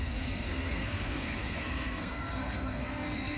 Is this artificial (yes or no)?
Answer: yes